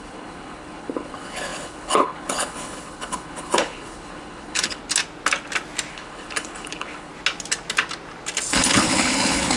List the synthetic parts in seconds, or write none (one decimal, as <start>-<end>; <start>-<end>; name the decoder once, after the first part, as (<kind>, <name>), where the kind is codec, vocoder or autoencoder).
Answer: 0.0-4.8 (codec, HILCodec); 5.9-7.1; 8.5-9.6